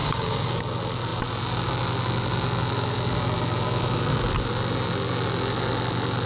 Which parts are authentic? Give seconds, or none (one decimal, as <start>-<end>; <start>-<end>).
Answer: 0.6-6.3